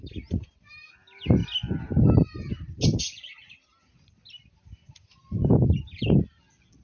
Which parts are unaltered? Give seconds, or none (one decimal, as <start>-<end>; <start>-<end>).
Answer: 0.0-6.8